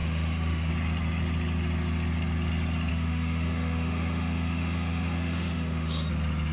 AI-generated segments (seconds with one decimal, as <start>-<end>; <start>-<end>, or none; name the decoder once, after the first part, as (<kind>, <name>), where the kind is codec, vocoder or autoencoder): 0.0-0.7 (autoencoder, DAC-VAE); 2.9-6.1